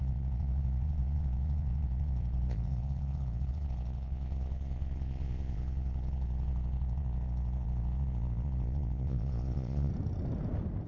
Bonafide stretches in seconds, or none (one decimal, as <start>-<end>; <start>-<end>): 9.9-10.9